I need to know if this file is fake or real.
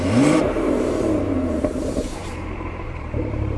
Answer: fake